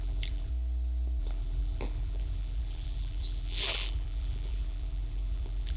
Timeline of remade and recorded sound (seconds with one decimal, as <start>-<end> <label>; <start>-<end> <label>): 0.0-0.5 remade; 0.5-1.2 recorded; 1.2-5.8 remade